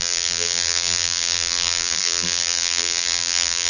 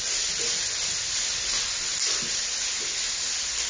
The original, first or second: second